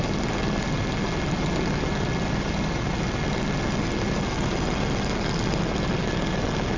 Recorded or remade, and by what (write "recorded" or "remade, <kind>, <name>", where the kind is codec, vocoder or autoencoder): recorded